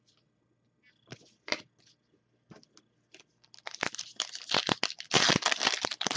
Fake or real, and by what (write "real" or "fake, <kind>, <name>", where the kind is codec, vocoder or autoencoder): real